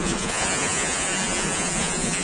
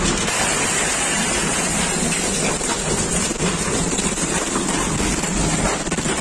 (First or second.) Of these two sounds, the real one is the second